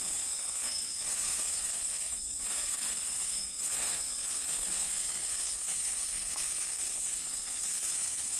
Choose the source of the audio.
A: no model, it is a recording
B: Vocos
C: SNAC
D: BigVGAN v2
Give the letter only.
C